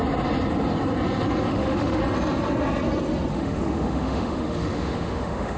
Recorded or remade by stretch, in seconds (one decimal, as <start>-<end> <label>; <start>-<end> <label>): 0.0-1.5 recorded; 1.5-2.0 remade; 2.0-3.3 recorded; 3.3-5.6 remade